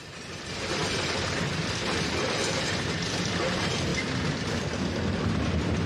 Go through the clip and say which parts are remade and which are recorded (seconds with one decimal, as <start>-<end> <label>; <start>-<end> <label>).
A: 0.0-5.9 recorded

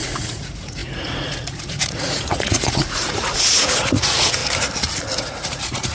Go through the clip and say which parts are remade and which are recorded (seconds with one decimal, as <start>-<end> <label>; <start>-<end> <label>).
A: 0.0-4.4 remade; 4.4-5.2 recorded; 5.2-5.9 remade

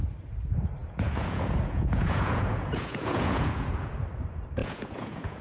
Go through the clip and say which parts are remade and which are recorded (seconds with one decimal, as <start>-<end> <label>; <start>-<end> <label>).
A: 0.0-0.8 recorded; 0.8-3.9 remade; 3.9-4.6 recorded; 4.6-5.4 remade

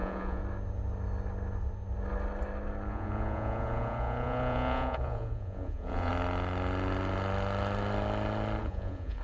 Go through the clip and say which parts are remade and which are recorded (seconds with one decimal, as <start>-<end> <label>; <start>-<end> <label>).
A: 0.0-0.4 remade; 0.4-2.9 recorded; 2.9-6.1 remade; 6.1-8.6 recorded; 8.6-9.2 remade

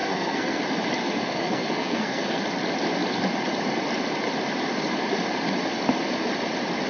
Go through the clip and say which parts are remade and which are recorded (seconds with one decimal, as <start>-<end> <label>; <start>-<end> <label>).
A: 0.0-0.6 remade; 0.6-1.0 recorded; 1.0-2.4 remade; 2.4-6.9 recorded

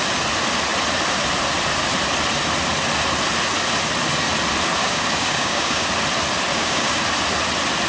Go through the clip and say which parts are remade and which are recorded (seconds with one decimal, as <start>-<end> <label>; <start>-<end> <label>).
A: 0.0-4.8 recorded; 4.8-5.9 remade; 5.9-6.5 recorded; 6.5-7.0 remade; 7.0-7.9 recorded

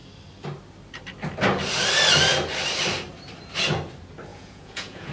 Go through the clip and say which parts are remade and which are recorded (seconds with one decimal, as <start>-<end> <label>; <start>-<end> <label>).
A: 0.0-4.3 recorded; 4.3-5.1 remade